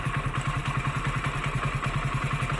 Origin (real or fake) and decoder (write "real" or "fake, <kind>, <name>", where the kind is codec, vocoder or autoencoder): real